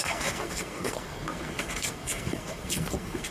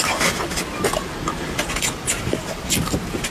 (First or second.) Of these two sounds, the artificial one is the first